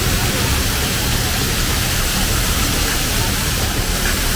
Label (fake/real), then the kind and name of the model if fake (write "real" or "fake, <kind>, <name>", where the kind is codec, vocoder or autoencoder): fake, vocoder, BigVGAN v2